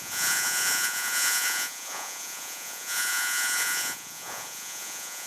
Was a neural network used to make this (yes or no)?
yes